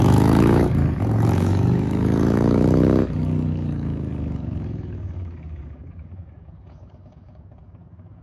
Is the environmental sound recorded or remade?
remade